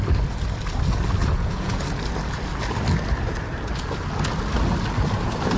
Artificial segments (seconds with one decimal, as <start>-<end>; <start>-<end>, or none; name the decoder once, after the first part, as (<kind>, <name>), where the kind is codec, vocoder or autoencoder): 1.2-1.8 (vocoder, Vocos)